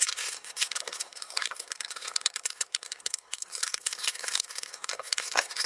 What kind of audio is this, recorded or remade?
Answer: remade